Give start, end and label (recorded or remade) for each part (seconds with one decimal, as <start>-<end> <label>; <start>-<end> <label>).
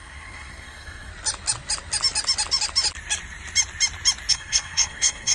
0.0-1.1 remade; 1.1-4.3 recorded; 4.3-5.3 remade